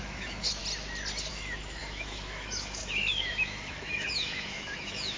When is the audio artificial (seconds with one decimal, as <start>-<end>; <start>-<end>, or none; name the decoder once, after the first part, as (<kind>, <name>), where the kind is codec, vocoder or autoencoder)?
0.0-0.6 (autoencoder, DAC-VAE); 1.3-5.2